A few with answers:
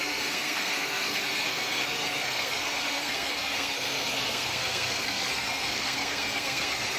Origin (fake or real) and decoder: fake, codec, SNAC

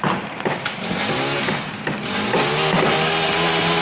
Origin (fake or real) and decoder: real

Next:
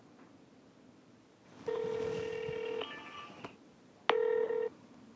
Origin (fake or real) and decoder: real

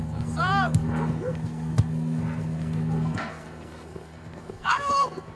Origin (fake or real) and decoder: fake, codec, SNAC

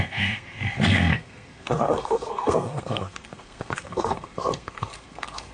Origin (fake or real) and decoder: fake, codec, SNAC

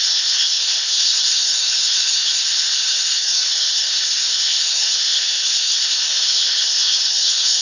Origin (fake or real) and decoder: fake, codec, SNAC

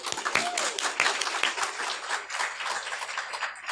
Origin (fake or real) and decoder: real